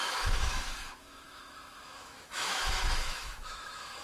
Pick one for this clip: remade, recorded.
remade